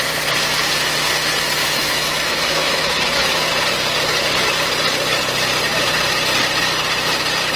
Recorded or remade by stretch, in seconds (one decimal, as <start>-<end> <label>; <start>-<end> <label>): 0.0-1.6 recorded; 1.6-3.5 remade; 3.5-7.6 recorded